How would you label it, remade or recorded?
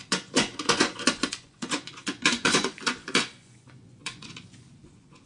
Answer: remade